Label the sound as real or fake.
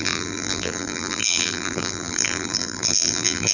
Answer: fake